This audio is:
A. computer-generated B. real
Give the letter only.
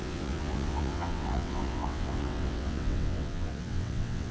A